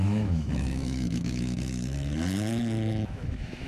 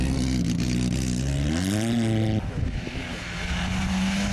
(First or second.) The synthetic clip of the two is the first